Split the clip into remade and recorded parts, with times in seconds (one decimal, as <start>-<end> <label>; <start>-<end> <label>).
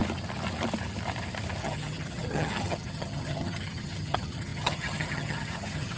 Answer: 0.0-1.6 recorded; 1.6-6.0 remade